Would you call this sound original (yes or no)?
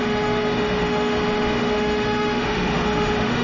no